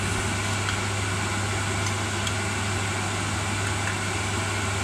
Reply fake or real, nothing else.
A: real